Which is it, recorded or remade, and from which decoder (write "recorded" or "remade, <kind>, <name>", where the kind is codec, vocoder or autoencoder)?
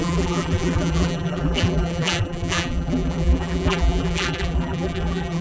remade, vocoder, BigVGAN v2